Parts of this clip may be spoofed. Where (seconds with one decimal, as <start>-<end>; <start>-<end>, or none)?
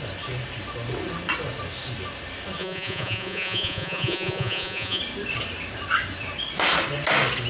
2.6-5.0